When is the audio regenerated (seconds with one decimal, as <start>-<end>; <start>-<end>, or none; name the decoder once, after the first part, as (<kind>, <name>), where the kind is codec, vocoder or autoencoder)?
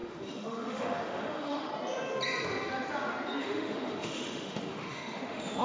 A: 0.0-1.7 (autoencoder, DAC-VAE); 3.4-5.6